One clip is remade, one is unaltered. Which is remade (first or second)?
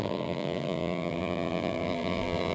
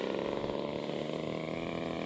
first